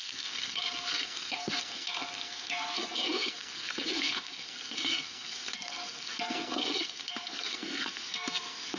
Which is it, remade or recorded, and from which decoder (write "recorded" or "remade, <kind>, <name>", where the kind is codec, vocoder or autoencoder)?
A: remade, codec, SNAC